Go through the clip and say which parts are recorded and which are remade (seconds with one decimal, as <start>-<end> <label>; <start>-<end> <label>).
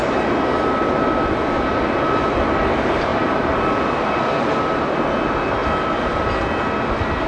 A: 0.0-3.1 recorded; 3.1-3.7 remade; 3.7-5.6 recorded; 5.6-6.2 remade; 6.2-7.3 recorded